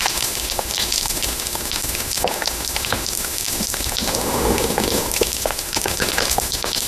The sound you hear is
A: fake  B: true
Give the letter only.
A